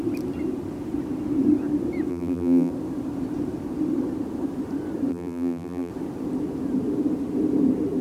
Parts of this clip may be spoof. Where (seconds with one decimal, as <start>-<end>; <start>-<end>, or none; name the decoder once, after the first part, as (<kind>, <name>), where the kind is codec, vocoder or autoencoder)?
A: 2.1-2.7 (vocoder, BigVGAN v2); 5.1-5.9